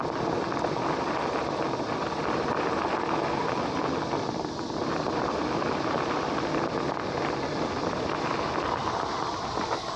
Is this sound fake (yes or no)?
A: no